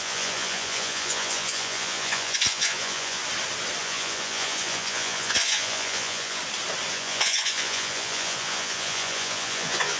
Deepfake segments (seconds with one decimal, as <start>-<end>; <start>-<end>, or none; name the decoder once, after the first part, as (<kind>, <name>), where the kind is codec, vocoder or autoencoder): 0.0-3.2 (vocoder, Vocos); 3.8-6.4; 6.9-10.0